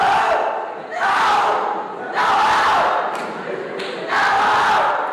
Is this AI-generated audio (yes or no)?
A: no